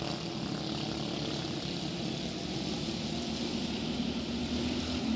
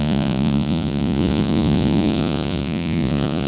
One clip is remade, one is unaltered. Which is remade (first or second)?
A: second